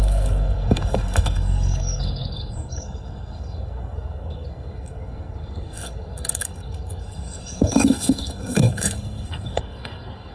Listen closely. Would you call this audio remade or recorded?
remade